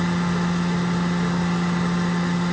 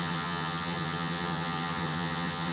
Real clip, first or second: first